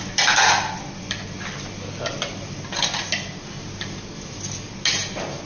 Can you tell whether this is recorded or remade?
recorded